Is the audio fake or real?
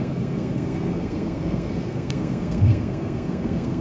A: fake